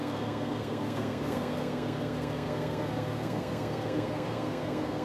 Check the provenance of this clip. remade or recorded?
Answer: remade